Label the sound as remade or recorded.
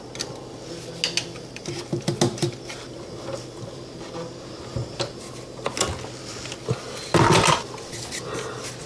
recorded